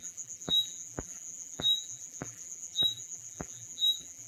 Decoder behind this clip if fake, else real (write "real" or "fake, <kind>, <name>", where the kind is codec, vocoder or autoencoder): fake, vocoder, BigVGAN v2